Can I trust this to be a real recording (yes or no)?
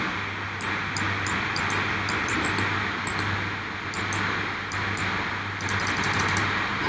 yes